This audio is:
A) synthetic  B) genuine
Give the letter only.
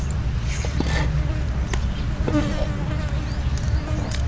B